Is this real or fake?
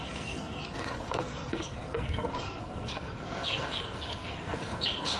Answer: fake